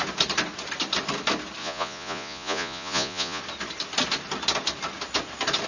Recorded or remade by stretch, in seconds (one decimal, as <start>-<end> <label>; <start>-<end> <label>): 0.0-1.6 recorded; 1.6-3.4 remade; 3.4-5.7 recorded